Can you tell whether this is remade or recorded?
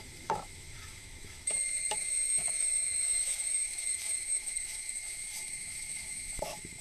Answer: remade